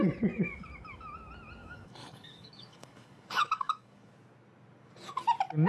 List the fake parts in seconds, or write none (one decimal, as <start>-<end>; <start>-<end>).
1.6-4.1